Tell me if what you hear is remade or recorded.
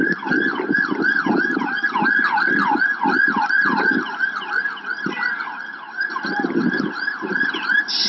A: recorded